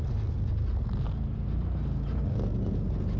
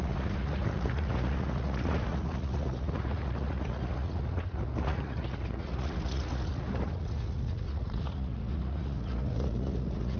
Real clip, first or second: first